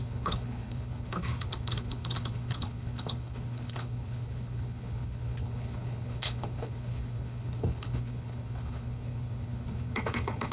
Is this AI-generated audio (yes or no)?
yes